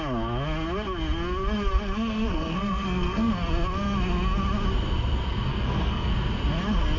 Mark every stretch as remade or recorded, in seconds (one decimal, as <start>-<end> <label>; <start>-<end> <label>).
0.0-2.3 recorded; 2.3-3.3 remade; 3.3-5.5 recorded; 5.5-6.1 remade; 6.1-7.0 recorded